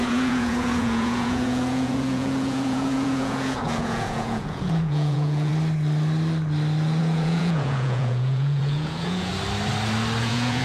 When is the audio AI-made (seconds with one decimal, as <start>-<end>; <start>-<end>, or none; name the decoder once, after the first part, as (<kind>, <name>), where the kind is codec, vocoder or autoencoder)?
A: 0.0-5.5 (vocoder, Vocos); 7.0-9.3; 10.2-10.6